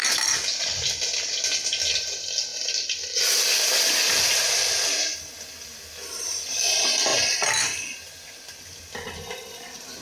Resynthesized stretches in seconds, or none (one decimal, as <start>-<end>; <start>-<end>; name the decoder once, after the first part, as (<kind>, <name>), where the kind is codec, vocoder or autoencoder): none